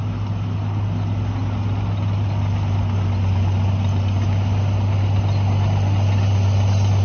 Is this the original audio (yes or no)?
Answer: yes